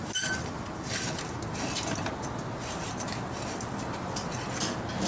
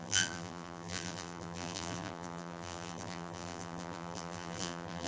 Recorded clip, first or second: first